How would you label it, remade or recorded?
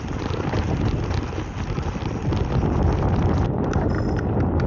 recorded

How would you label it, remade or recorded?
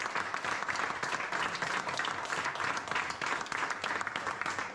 recorded